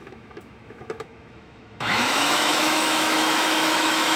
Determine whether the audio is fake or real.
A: fake